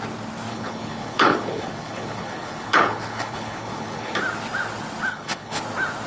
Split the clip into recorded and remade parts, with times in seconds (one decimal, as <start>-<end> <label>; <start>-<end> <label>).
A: 0.0-0.5 recorded; 0.5-4.2 remade; 4.2-5.1 recorded; 5.1-5.6 remade; 5.6-6.1 recorded